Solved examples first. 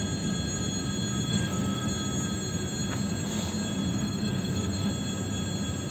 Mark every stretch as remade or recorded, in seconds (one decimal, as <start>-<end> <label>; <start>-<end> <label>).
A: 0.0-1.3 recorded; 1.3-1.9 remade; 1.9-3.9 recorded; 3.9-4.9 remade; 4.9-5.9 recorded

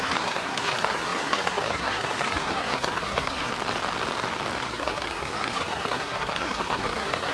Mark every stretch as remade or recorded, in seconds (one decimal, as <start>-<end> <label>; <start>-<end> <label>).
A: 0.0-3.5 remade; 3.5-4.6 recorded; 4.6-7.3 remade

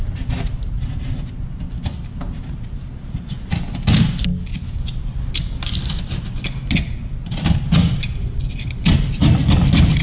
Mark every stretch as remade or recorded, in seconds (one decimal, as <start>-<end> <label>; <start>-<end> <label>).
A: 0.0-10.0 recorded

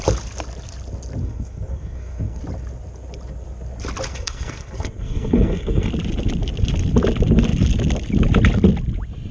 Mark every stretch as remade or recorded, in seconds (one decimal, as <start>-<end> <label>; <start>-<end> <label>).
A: 0.0-1.2 recorded; 1.2-2.4 remade; 2.4-4.1 recorded; 4.1-5.9 remade; 5.9-9.3 recorded